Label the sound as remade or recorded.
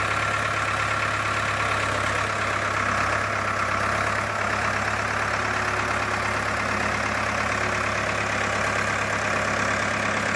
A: recorded